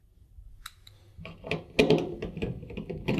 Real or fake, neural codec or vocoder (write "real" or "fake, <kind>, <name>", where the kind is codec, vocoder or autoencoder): real